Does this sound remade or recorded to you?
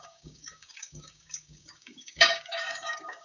remade